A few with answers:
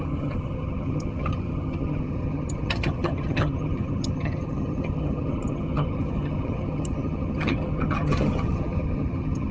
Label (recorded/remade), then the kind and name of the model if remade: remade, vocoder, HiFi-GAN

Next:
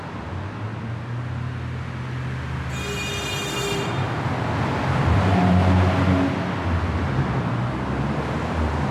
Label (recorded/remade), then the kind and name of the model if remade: recorded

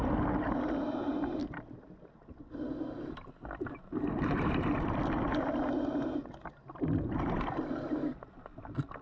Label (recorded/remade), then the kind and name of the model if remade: recorded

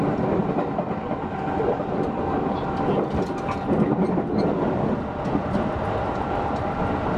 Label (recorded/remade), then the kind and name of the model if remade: recorded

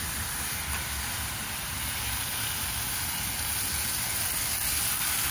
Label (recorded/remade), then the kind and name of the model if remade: recorded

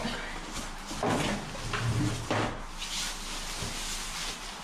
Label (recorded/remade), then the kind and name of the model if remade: recorded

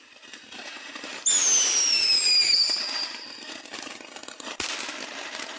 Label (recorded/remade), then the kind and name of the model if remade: recorded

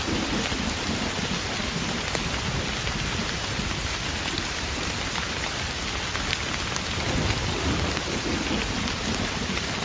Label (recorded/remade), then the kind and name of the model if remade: recorded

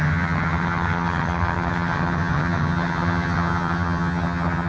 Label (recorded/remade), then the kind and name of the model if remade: remade, vocoder, HiFi-GAN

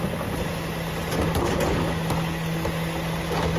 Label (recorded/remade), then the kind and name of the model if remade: recorded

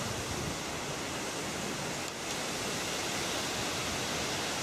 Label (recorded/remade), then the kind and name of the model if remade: recorded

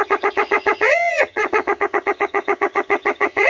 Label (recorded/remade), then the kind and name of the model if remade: remade, vocoder, HiFi-GAN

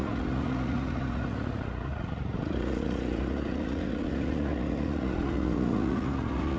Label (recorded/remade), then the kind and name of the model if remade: remade, vocoder, Vocos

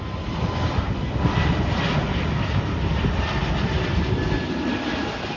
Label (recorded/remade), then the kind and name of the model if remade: recorded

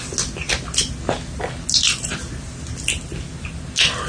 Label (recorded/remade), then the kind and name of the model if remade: recorded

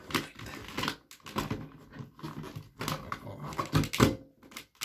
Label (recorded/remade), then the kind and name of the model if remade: recorded